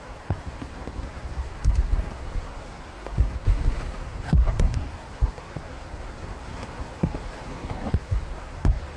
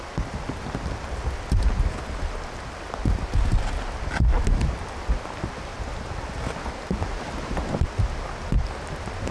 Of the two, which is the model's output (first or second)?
first